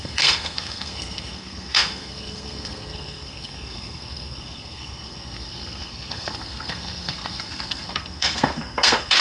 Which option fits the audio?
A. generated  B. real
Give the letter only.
A